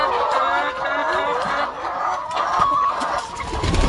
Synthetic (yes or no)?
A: no